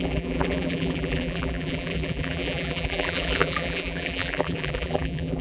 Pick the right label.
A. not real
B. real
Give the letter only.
A